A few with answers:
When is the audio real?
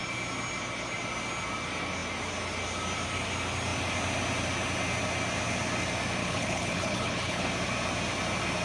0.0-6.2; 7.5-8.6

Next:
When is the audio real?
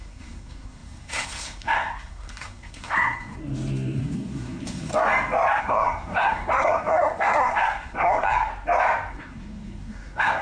3.4-4.0; 4.9-5.6; 8.5-9.1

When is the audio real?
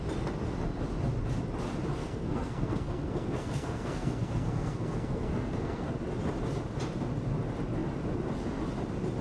0.0-2.0; 5.9-9.2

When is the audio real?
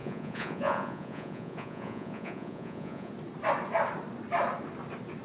3.1-5.2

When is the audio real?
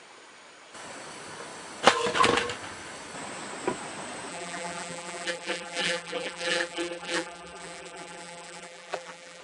0.0-4.3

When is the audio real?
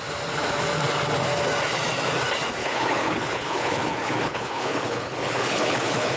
0.0-2.6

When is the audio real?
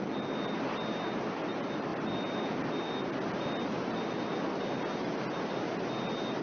0.0-6.4